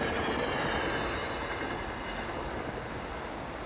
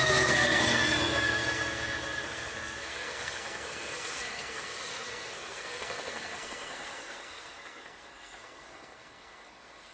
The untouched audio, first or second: first